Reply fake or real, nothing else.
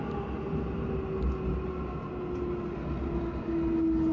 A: real